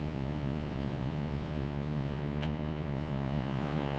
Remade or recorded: remade